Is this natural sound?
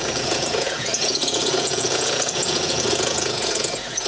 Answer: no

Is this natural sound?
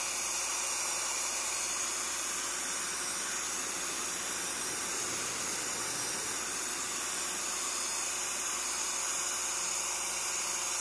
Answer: yes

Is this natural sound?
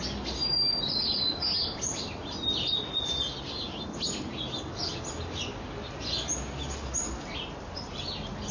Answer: yes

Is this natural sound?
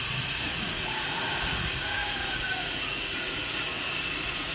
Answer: no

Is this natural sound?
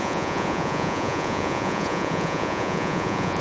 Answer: no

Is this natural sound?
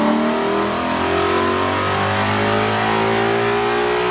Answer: yes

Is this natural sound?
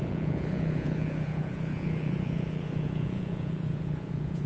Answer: no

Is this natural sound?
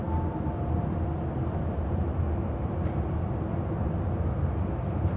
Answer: yes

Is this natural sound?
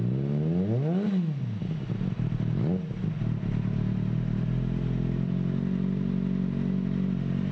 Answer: yes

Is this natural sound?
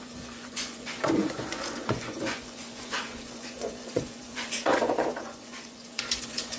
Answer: no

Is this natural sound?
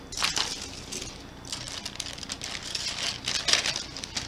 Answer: yes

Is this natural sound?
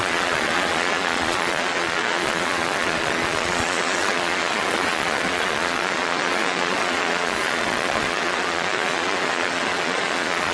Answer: no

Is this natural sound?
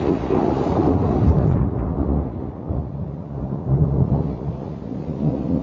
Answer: no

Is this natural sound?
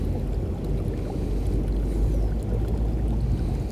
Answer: yes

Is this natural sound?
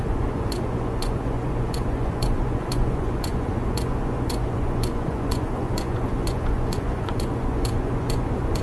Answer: no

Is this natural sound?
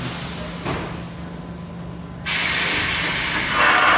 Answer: yes